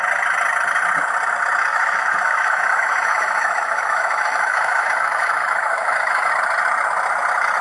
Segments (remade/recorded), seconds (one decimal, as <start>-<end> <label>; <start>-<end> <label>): 0.0-1.7 recorded; 1.7-6.3 remade; 6.3-7.6 recorded